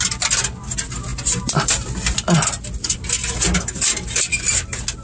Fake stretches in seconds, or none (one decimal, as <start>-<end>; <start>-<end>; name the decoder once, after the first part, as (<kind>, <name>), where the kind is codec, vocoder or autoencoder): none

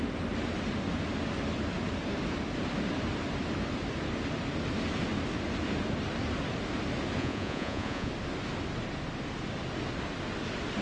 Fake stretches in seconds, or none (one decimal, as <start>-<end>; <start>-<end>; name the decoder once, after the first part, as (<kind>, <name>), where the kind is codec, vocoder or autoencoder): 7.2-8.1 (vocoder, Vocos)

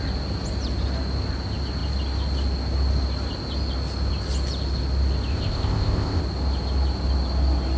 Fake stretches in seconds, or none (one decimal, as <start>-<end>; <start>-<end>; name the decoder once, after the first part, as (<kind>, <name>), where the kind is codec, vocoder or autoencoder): 5.3-6.2 (codec, ZipCodec)